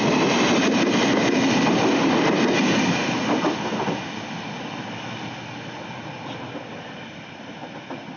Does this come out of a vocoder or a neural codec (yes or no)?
no